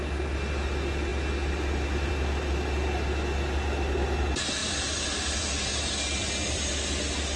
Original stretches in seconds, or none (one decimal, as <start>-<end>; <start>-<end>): 0.0-4.6; 5.9-7.4